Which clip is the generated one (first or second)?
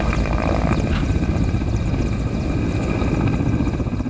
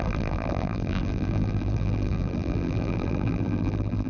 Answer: second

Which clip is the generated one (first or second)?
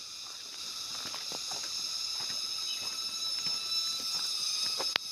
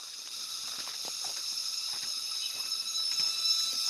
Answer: second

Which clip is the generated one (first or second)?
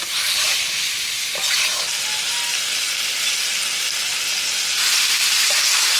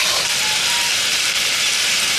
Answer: second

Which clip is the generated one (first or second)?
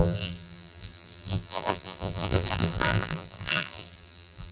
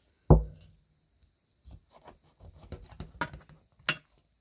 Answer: first